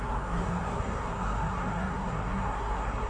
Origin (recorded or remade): remade